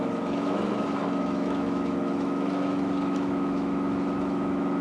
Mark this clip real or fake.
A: fake